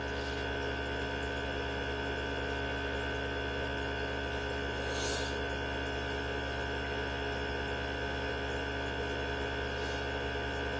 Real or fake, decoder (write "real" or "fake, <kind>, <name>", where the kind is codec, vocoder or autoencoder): real